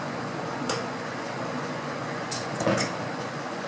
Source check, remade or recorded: remade